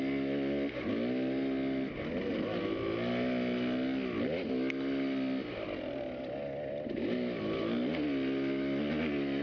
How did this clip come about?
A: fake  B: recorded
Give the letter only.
B